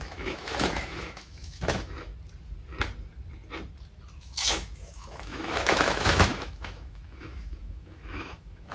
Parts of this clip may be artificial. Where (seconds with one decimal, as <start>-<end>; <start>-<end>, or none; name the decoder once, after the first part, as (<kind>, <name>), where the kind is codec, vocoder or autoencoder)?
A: 0.0-2.1 (autoencoder, DAC-VAE); 4.2-8.7